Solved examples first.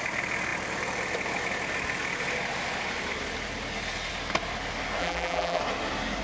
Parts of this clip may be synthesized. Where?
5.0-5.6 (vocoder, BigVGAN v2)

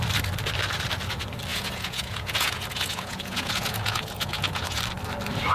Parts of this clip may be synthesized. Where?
1.5-4.8 (vocoder, Vocos)

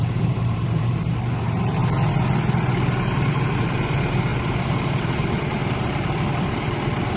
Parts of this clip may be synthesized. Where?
0.0-1.8 (vocoder, BigVGAN v2); 3.3-7.2

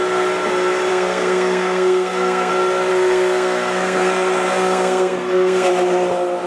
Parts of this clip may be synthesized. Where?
0.9-2.5 (codec, SNAC); 2.9-5.7

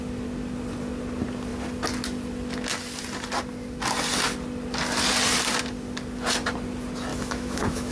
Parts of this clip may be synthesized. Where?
7.1-7.9 (autoencoder, DAC-VAE)

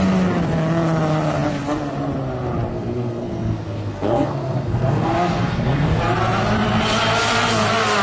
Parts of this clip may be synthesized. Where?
2.7-6.0 (codec, SNAC)